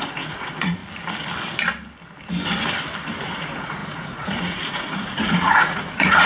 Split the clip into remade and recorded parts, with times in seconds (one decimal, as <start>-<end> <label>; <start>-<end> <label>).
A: 0.0-0.8 remade; 0.8-3.4 recorded; 3.4-6.3 remade